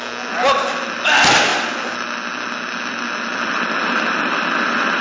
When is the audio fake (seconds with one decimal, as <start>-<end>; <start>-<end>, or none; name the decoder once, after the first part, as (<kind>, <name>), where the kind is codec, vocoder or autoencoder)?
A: none